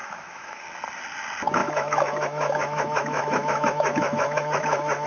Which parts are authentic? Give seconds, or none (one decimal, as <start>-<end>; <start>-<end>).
0.6-1.6